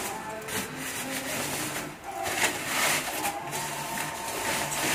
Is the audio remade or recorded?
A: recorded